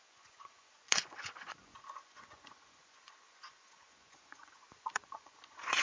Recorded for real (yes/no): no